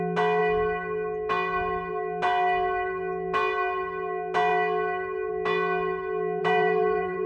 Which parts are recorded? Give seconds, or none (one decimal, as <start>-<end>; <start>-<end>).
0.0-6.4